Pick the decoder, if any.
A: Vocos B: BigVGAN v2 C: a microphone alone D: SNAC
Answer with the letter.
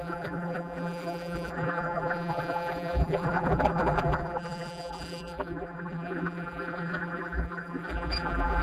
B